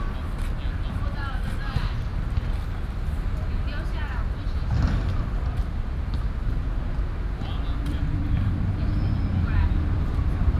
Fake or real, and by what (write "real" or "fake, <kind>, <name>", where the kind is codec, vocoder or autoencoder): real